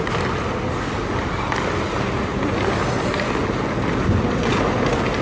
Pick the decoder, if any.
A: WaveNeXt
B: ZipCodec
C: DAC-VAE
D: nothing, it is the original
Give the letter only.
D